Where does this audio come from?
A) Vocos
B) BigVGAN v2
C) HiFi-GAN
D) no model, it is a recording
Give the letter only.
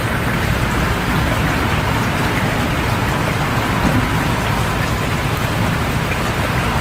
D